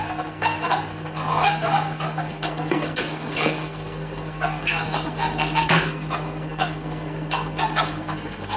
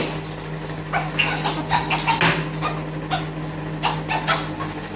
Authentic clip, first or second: second